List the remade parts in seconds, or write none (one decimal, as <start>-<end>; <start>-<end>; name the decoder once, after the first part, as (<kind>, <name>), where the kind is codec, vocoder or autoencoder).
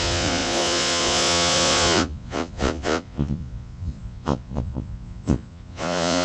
0.0-6.2 (vocoder, Vocos)